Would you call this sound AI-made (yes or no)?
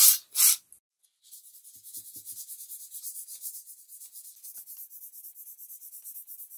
no